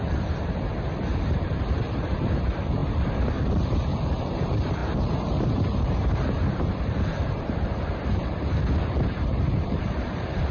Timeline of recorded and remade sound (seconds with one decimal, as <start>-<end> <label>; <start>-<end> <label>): 0.0-10.5 remade